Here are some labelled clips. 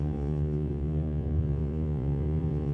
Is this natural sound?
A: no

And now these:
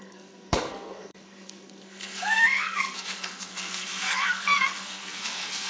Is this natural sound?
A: no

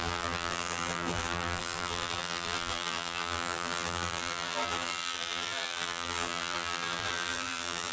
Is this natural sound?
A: no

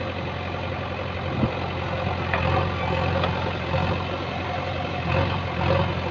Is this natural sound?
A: yes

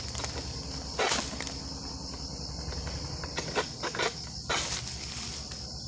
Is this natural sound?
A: yes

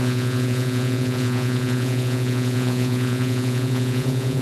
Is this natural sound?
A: no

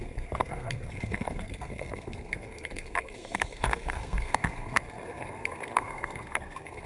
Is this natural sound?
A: no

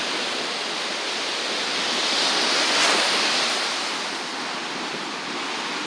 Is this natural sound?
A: yes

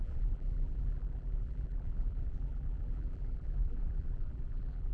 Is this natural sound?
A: no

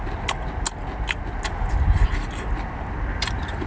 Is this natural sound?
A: yes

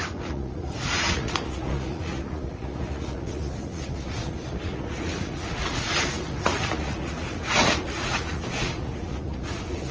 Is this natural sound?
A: no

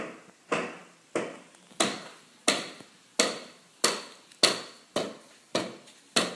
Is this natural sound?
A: yes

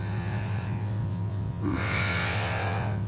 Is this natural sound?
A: no